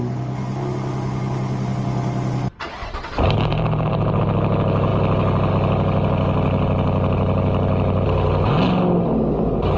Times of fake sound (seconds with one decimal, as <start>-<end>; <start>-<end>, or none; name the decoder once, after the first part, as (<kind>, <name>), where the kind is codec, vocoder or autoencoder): 2.8-4.2 (vocoder, BigVGAN v2)